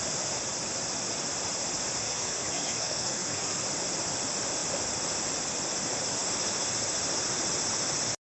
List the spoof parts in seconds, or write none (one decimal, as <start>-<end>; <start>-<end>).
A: 2.0-3.6